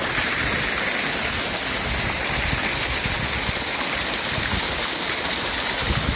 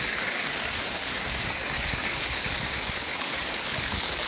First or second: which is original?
first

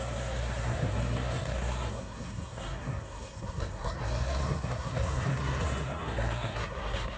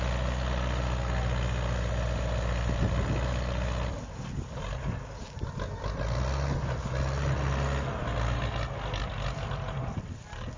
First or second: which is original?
second